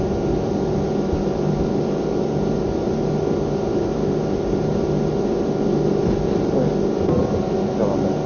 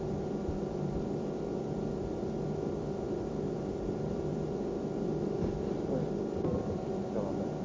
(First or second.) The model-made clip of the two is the second